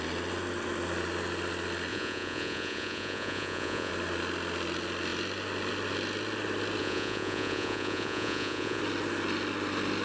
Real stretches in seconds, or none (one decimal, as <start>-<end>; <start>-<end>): 0.0-1.9; 3.9-6.8; 8.8-10.0